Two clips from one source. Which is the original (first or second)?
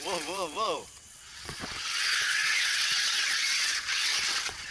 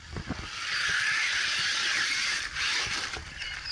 second